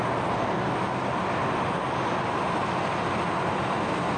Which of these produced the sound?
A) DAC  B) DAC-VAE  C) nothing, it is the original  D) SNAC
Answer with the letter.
C